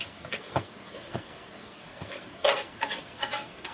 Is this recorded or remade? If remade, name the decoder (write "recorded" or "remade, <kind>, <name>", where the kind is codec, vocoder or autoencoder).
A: remade, codec, SNAC